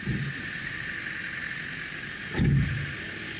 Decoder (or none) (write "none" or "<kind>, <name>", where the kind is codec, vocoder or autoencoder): none